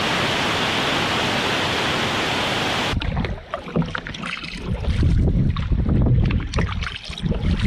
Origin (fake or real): real